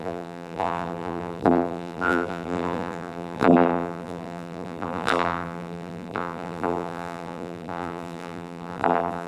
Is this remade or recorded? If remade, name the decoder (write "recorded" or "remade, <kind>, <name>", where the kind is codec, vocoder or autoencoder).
remade, vocoder, BigVGAN v2